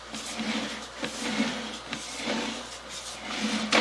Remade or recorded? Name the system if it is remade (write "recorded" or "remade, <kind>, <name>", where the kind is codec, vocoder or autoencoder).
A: recorded